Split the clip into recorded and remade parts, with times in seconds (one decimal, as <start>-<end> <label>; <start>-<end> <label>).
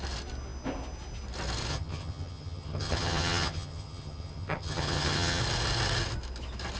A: 0.0-1.7 recorded; 1.7-5.4 remade; 5.4-6.8 recorded